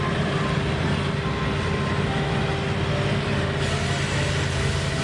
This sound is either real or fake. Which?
real